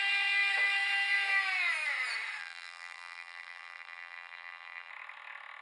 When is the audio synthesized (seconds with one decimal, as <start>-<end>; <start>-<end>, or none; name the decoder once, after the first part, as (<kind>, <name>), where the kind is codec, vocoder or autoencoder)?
2.4-4.9 (vocoder, BigVGAN v2)